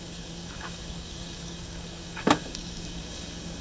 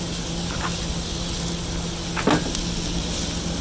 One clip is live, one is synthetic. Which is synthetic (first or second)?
first